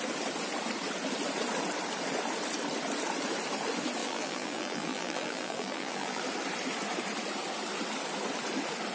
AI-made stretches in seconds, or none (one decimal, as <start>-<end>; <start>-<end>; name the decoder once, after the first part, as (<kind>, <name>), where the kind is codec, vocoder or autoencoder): 4.0-6.2 (vocoder, BigVGAN v2)